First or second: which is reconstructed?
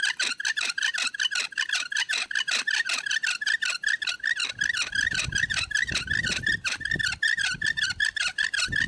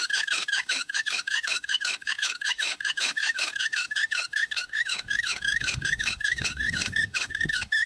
second